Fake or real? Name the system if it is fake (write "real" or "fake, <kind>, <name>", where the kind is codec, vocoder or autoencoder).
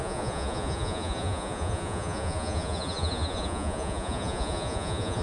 fake, vocoder, Vocos